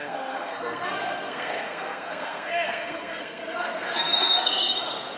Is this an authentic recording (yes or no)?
no